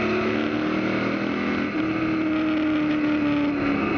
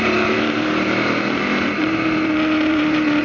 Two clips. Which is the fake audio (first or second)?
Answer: second